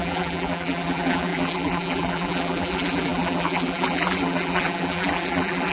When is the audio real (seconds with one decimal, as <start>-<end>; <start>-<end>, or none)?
none

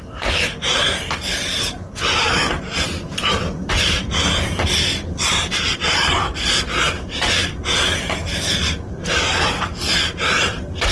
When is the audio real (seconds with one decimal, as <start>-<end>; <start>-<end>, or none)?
0.0-1.3; 6.5-8.3; 9.5-10.9